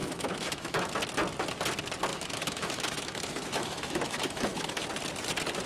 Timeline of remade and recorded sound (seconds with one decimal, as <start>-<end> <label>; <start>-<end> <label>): 0.0-0.9 remade; 0.9-2.1 recorded; 2.1-4.8 remade; 4.8-5.7 recorded